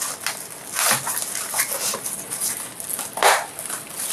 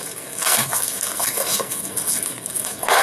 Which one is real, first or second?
first